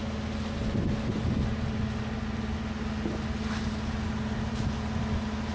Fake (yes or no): no